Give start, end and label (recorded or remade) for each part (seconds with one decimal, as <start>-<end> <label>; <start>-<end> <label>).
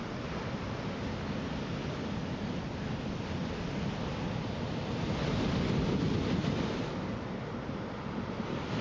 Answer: 0.0-8.8 recorded